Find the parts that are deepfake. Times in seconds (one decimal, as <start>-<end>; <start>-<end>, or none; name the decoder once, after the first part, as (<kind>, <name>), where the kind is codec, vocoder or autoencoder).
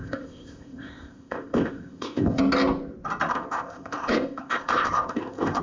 0.0-2.4 (codec, ZipCodec); 3.3-5.6